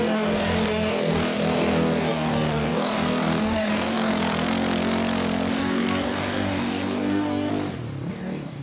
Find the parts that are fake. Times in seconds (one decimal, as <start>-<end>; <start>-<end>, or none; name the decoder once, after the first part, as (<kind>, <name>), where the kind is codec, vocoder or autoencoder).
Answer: 0.0-4.1 (codec, DAC); 5.5-7.5; 8.1-8.6